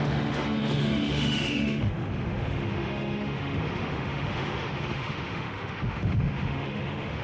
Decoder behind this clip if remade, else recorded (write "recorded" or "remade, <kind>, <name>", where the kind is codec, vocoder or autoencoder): remade, autoencoder, DAC-VAE